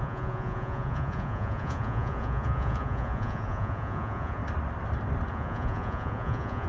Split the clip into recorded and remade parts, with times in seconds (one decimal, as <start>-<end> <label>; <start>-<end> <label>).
0.0-4.4 remade; 4.4-5.3 recorded; 5.3-6.7 remade